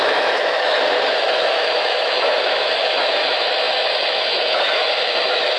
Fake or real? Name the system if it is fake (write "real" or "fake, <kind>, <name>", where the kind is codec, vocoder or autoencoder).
fake, autoencoder, DAC-VAE